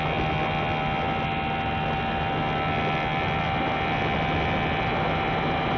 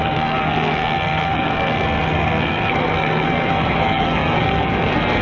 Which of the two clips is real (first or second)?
first